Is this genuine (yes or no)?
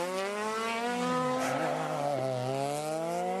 yes